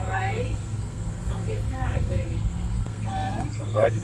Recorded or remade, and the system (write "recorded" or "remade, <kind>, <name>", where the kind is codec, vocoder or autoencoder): remade, codec, SNAC